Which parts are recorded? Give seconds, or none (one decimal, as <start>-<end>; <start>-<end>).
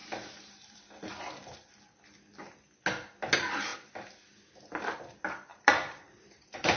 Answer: 0.8-5.5